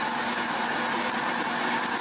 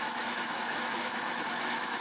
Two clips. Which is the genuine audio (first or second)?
first